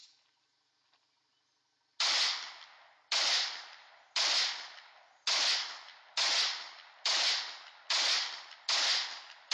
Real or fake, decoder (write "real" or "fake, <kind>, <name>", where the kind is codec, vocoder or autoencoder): real